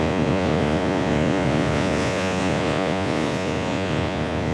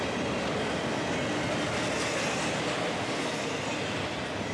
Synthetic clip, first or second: first